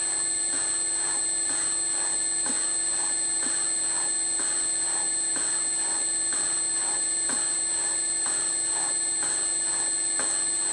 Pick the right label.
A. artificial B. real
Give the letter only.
B